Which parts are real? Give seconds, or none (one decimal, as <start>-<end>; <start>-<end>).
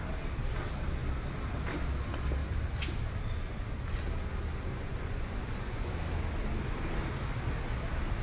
0.0-4.7; 5.9-8.2